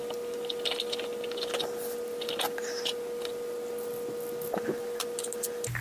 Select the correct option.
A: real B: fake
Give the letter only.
A